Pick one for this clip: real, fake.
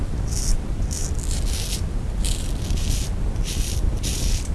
real